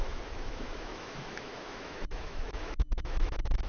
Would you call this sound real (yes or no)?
no